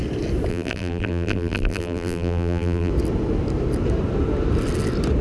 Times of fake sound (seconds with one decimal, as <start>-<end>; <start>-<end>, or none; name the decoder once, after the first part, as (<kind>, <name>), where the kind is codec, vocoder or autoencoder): 0.5-2.9 (vocoder, BigVGAN v2)